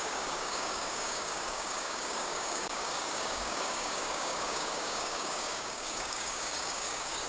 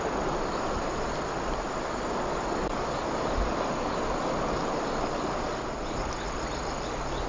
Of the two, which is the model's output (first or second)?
first